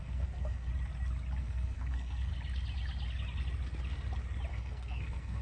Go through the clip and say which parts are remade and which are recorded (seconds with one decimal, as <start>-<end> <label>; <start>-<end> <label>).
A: 0.0-0.7 remade; 0.7-1.4 recorded; 1.4-2.3 remade; 2.3-4.5 recorded; 4.5-5.4 remade

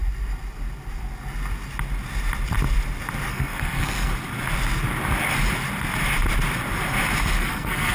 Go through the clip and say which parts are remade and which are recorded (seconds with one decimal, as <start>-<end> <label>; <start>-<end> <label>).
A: 0.0-3.3 recorded; 3.3-4.1 remade; 4.1-7.4 recorded; 7.4-7.9 remade

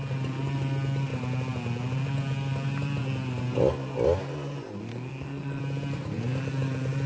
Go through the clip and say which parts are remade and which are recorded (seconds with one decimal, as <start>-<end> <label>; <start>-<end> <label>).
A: 0.0-4.9 recorded; 4.9-5.6 remade; 5.6-7.1 recorded

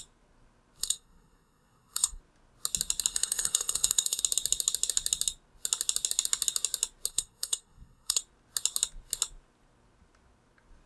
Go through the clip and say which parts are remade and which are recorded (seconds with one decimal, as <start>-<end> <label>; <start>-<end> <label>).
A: 0.0-0.8 recorded; 0.8-2.2 remade; 2.2-3.1 recorded; 3.1-4.2 remade; 4.2-7.1 recorded; 7.1-8.2 remade; 8.2-10.9 recorded

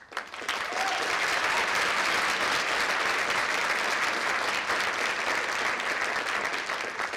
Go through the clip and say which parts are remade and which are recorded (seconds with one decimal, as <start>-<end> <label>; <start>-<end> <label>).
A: 0.0-7.2 recorded

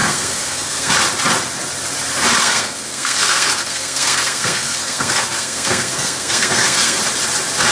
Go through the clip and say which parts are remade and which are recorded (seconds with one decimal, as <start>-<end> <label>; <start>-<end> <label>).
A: 0.0-0.9 remade; 0.9-2.4 recorded; 2.4-7.0 remade; 7.0-7.7 recorded